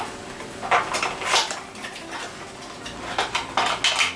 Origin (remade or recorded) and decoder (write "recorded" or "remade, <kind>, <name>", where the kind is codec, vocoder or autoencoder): recorded